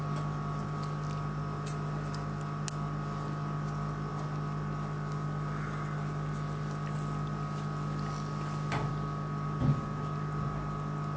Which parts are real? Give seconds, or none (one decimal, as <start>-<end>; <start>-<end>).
0.0-11.2